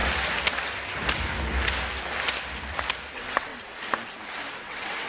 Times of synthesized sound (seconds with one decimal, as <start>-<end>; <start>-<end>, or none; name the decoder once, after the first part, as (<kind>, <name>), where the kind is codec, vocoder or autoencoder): 3.1-3.5 (vocoder, WaveNeXt); 4.6-5.1